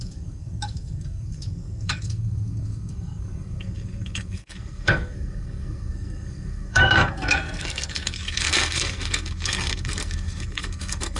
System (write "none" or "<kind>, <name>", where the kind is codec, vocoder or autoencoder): codec, SNAC